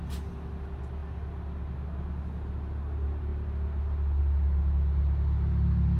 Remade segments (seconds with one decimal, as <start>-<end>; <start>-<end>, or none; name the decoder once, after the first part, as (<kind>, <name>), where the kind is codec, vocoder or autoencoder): none